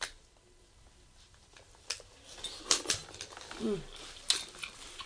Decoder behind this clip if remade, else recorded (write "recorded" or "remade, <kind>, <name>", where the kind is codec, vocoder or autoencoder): recorded